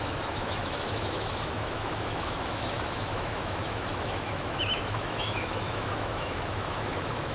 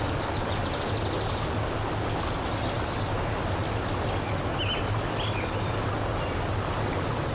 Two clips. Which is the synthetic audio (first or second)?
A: first